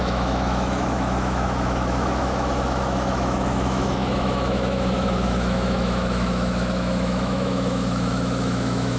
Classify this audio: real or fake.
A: fake